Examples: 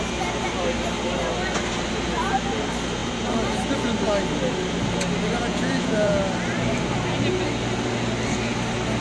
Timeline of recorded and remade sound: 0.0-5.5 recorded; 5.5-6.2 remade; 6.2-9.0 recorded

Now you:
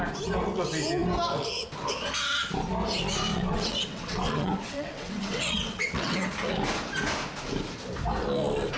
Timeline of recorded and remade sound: 0.0-3.3 recorded; 3.3-6.3 remade; 6.3-8.8 recorded

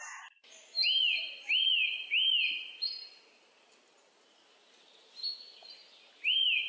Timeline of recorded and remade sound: 0.0-6.7 recorded

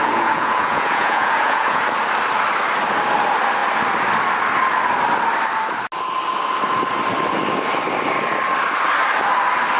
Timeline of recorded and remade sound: 0.0-1.8 remade; 1.8-9.8 recorded